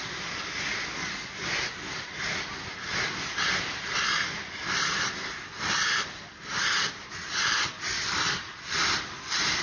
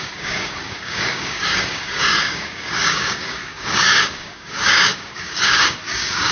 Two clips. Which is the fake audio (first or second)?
second